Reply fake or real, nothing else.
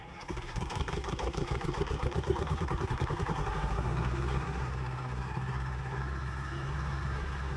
fake